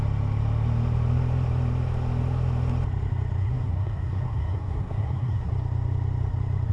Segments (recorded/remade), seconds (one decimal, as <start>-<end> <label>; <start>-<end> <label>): 0.0-3.4 recorded; 3.4-5.5 remade; 5.5-6.7 recorded